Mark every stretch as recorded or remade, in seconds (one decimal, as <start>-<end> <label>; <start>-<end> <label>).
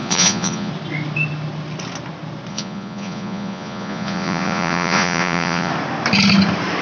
0.0-0.7 remade; 0.7-2.5 recorded; 2.5-5.7 remade; 5.7-6.8 recorded